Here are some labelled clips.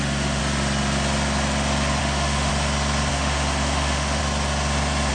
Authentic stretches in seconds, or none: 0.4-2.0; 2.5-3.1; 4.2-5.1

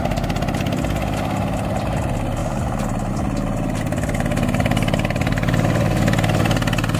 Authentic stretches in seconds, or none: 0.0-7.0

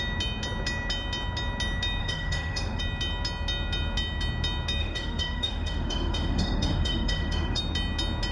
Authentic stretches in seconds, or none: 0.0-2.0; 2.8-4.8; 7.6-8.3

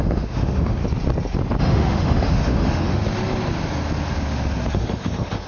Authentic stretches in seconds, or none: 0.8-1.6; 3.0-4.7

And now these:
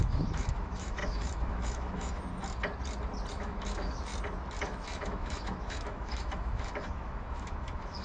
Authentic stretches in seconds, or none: 2.3-3.3; 4.1-4.6